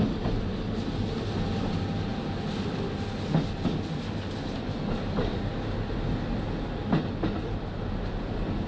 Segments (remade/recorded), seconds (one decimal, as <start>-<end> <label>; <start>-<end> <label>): 0.0-8.7 recorded